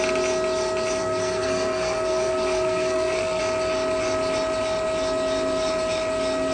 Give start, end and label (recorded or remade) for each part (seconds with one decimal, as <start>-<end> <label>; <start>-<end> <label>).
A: 0.0-1.0 recorded; 1.0-3.4 remade; 3.4-6.5 recorded